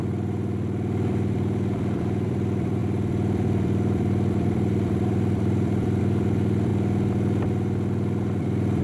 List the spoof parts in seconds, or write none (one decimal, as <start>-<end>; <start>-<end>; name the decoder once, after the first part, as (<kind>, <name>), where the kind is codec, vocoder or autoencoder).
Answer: 0.0-6.7 (vocoder, BigVGAN v2); 8.4-8.8